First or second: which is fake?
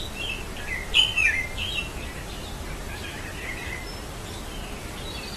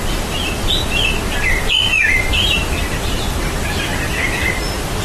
second